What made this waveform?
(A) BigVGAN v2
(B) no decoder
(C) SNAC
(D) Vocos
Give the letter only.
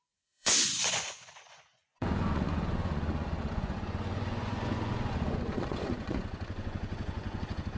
D